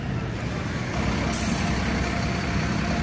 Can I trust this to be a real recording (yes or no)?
yes